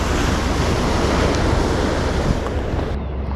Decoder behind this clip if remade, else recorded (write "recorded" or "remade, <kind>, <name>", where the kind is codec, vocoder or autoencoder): recorded